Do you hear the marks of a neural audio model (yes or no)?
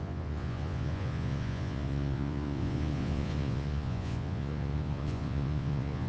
yes